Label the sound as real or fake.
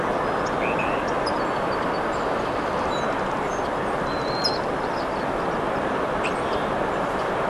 real